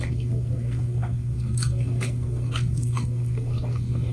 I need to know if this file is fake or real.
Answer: fake